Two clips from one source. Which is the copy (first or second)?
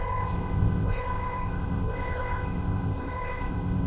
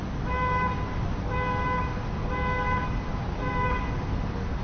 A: first